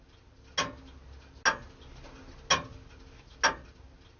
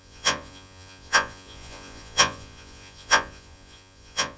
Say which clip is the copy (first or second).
second